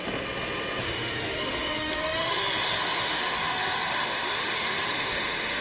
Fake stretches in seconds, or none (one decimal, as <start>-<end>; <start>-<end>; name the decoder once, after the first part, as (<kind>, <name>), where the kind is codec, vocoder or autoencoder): 0.8-5.6 (autoencoder, DAC-VAE)